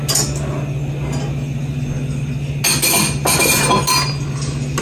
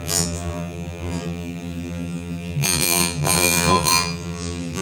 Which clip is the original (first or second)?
first